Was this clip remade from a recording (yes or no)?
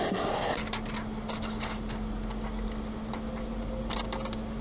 no